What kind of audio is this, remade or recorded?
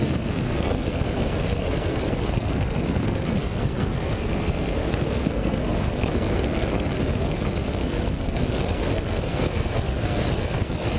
remade